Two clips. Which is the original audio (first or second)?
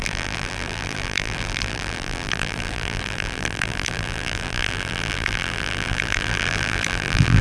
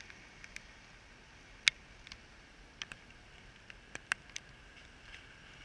second